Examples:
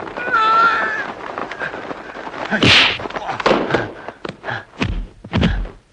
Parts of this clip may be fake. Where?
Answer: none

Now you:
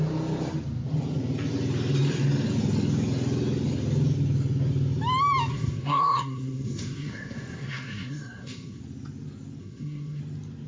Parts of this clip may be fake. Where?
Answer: 5.5-8.8 (codec, SNAC); 9.6-10.2